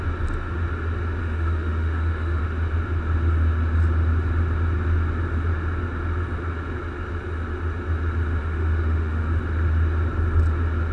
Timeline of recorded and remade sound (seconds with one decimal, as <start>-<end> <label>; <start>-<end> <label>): 0.0-1.2 recorded; 1.2-2.4 remade; 2.4-8.4 recorded; 8.4-9.4 remade; 9.4-10.9 recorded

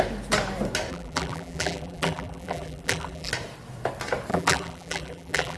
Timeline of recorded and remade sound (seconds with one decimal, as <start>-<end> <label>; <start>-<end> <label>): 0.0-0.9 recorded; 0.9-3.3 remade; 3.3-4.3 recorded; 4.3-5.6 remade

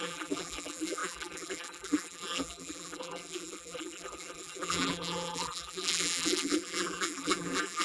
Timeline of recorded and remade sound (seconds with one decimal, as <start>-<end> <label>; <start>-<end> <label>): 0.0-7.8 remade

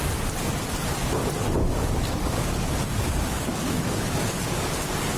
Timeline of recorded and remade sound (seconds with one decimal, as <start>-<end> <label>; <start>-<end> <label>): 0.0-1.6 recorded; 1.6-4.7 remade; 4.7-5.2 recorded

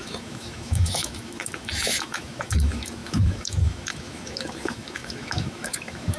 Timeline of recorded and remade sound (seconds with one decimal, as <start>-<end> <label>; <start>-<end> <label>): 0.0-6.2 remade

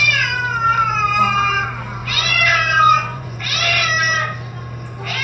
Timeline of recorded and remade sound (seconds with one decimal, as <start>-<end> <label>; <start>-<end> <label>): 0.0-2.0 recorded; 2.0-3.4 remade; 3.4-5.2 recorded